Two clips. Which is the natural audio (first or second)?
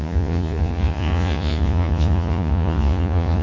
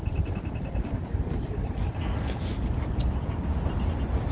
second